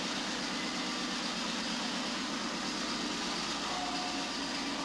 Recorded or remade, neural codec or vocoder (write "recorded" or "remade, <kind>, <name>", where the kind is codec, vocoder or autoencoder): recorded